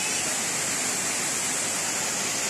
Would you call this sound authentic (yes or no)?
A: yes